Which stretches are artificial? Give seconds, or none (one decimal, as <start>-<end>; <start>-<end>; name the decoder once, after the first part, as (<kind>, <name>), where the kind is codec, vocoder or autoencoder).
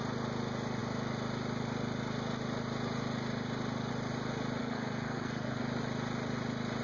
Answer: 4.6-5.6 (codec, SNAC)